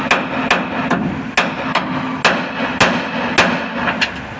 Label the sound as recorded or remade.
recorded